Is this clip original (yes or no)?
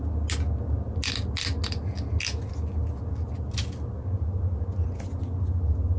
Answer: yes